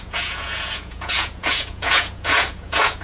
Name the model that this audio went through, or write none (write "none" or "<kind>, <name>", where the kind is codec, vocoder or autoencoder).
vocoder, Vocos